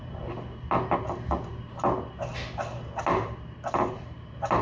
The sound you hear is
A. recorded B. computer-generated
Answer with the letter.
A